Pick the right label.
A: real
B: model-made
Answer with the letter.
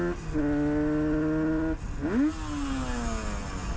A